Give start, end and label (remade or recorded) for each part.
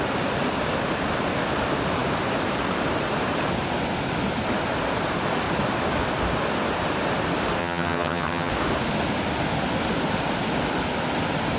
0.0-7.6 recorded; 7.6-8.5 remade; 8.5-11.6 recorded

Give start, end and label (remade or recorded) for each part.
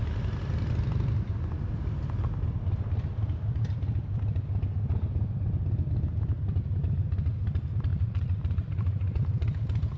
0.0-7.9 recorded; 7.9-9.2 remade; 9.2-10.0 recorded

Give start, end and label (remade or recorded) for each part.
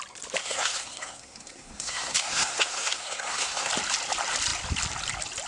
0.0-0.4 recorded; 0.4-3.7 remade; 3.7-5.5 recorded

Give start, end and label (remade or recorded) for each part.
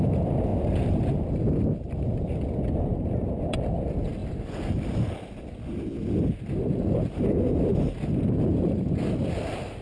0.0-9.8 remade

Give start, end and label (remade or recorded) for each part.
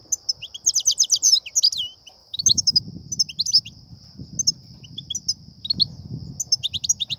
0.0-2.2 recorded; 2.2-2.8 remade; 2.8-7.2 recorded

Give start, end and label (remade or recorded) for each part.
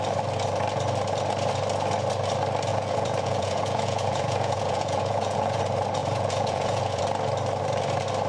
0.0-2.7 recorded; 2.7-5.6 remade; 5.6-6.0 recorded; 6.0-7.0 remade; 7.0-8.3 recorded